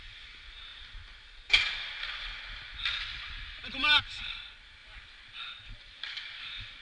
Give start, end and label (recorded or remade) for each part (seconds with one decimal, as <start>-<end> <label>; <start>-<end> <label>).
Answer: 0.0-4.8 remade; 4.8-5.5 recorded; 5.5-6.8 remade